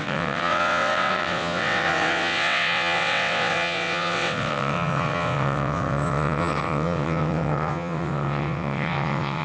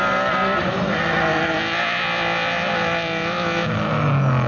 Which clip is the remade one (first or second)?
first